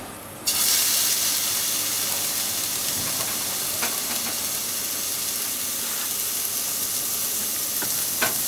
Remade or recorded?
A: recorded